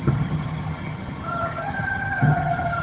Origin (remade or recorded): remade